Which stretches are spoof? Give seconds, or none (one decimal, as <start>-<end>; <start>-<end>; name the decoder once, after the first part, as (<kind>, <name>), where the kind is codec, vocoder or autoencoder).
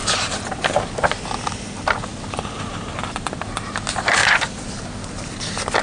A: 0.0-0.6 (vocoder, BigVGAN v2); 2.1-3.7; 4.2-4.7